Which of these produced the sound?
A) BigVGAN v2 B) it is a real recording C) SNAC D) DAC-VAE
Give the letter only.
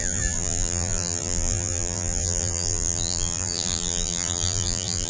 A